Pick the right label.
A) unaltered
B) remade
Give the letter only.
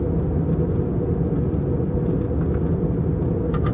A